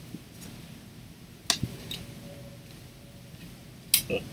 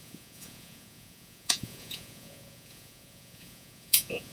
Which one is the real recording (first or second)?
first